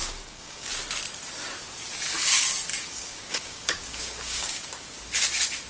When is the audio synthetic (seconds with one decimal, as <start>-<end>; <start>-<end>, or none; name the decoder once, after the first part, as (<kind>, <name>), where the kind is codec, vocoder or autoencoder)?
0.0-0.7 (codec, DAC); 2.7-4.7